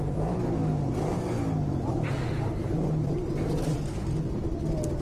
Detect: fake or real real